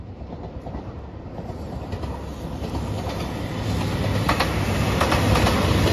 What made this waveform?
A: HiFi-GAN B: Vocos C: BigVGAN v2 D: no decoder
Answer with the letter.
D